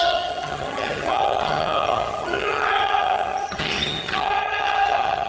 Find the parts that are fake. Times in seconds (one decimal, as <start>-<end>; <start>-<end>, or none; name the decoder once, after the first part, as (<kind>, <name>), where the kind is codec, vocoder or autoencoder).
0.0-5.3 (vocoder, HiFi-GAN)